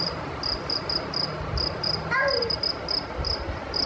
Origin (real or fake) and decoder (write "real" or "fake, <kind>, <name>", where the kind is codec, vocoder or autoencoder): real